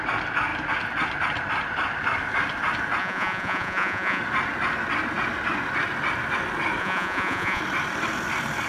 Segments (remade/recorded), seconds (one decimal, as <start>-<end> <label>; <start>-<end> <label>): 0.0-3.0 recorded; 3.0-4.2 remade; 4.2-6.8 recorded; 6.8-7.6 remade; 7.6-8.7 recorded